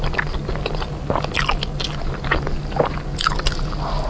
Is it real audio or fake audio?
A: real